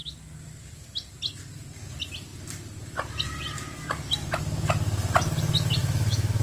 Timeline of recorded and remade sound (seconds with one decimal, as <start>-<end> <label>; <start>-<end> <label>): 0.0-5.8 recorded; 5.8-6.4 remade